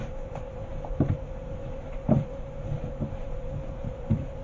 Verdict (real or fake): fake